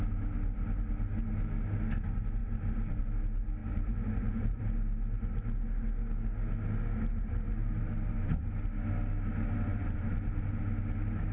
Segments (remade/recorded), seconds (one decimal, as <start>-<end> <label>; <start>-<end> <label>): 0.0-2.4 recorded; 2.4-3.0 remade; 3.0-3.6 recorded; 3.6-4.6 remade; 4.6-7.6 recorded; 7.6-8.4 remade; 8.4-9.7 recorded; 9.7-10.6 remade; 10.6-11.3 recorded